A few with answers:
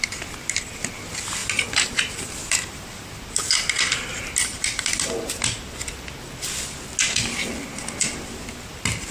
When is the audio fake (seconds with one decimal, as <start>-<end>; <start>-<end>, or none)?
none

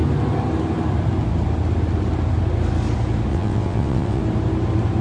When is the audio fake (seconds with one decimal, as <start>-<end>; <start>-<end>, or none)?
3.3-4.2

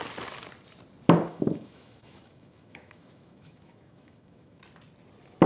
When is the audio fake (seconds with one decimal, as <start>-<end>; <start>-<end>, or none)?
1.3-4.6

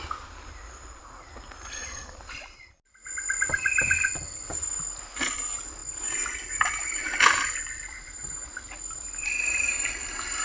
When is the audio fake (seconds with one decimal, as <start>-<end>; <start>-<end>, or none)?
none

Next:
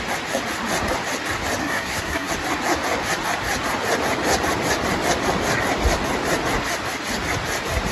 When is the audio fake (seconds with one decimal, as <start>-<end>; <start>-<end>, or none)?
1.6-2.3